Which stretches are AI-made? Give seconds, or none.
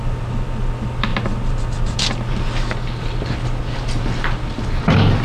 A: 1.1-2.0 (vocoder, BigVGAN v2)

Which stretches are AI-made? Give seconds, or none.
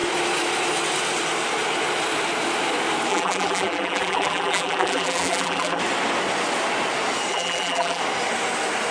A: 3.1-5.8 (vocoder, BigVGAN v2); 7.3-8.0